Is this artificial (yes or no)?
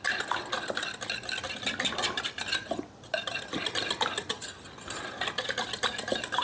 no